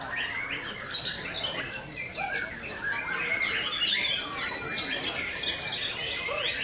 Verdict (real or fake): real